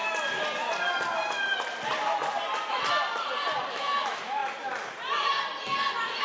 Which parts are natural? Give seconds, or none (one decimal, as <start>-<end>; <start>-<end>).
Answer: 0.0-3.7; 4.4-6.2